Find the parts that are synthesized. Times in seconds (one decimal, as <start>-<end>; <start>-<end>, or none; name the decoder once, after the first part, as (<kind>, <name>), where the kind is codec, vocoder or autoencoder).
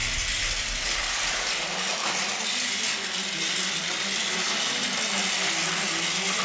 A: none